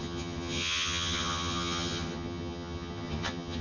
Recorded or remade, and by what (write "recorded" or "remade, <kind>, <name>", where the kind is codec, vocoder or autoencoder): remade, vocoder, HiFi-GAN